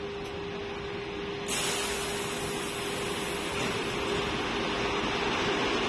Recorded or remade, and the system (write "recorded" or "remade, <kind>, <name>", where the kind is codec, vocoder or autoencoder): recorded